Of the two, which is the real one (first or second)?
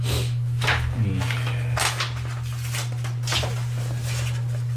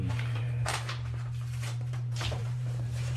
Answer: first